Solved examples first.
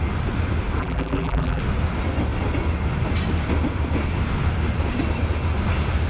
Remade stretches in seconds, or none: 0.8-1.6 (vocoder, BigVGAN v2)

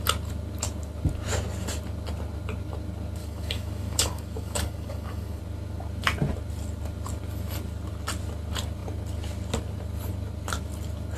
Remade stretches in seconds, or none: 3.2-5.4 (codec, DAC)

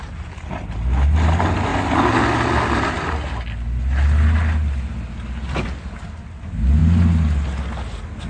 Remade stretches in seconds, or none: none

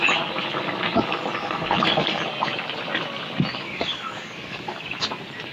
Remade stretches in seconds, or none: 1.4-2.2 (codec, DAC); 3.5-5.0

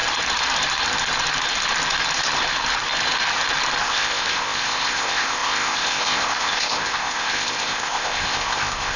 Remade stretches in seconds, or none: 3.8-9.0 (codec, ZipCodec)

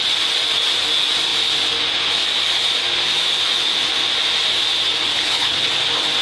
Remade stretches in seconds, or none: 5.1-5.7 (codec, HILCodec)

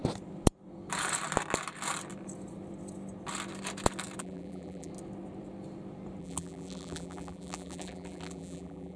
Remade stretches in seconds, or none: 4.2-4.9 (vocoder, BigVGAN v2); 6.2-9.0